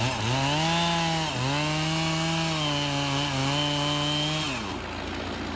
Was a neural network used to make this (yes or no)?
no